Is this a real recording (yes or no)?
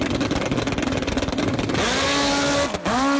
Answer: yes